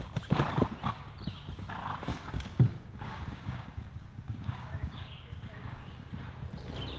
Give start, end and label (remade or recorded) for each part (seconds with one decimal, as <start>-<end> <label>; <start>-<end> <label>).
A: 0.0-2.1 recorded; 2.1-6.1 remade; 6.1-7.0 recorded